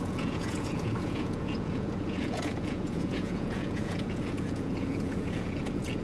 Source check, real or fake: fake